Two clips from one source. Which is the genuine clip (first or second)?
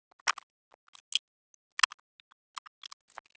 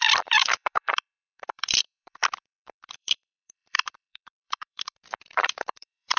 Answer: first